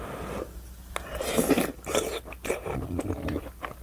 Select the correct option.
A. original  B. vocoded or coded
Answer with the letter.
A